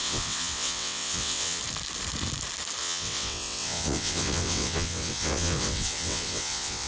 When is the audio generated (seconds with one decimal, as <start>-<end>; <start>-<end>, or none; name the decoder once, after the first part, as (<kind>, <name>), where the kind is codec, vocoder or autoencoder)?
0.0-1.6 (vocoder, WaveNeXt); 2.8-6.9